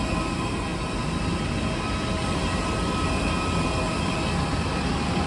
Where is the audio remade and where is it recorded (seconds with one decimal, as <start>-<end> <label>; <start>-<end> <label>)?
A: 0.0-5.3 recorded